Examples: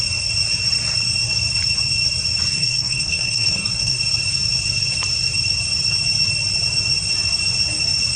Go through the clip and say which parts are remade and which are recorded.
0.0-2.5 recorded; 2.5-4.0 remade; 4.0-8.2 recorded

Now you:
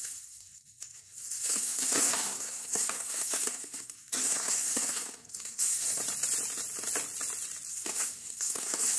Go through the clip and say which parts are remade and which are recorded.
0.0-6.0 remade; 6.0-7.7 recorded; 7.7-9.0 remade

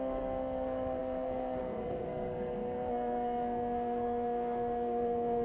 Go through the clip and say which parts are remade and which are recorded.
0.0-5.4 remade